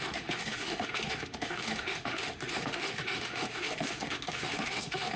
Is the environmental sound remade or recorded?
remade